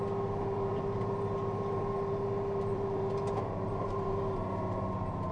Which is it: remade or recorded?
remade